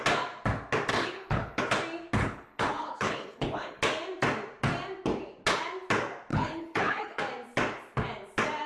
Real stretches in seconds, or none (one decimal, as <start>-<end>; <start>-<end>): 0.0-0.9; 1.6-2.2; 3.8-6.3; 7.2-8.7